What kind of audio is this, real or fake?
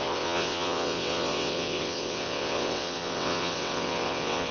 fake